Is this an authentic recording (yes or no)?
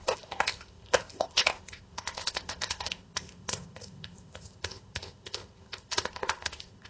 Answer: no